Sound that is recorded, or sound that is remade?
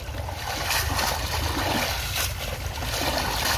recorded